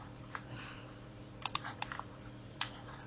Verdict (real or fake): fake